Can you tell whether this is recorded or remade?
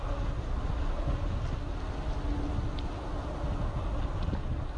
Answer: recorded